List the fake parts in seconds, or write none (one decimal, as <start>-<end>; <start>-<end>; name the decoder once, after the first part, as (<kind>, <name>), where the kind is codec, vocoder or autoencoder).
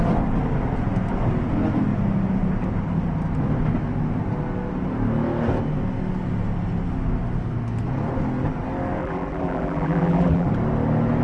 9.0-10.5 (vocoder, BigVGAN v2)